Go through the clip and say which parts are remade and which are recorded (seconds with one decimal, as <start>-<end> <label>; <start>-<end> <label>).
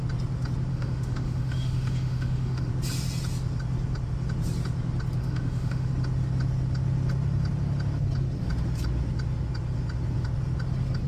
0.0-0.7 recorded; 0.7-2.7 remade; 2.7-5.2 recorded; 5.2-5.9 remade; 5.9-11.1 recorded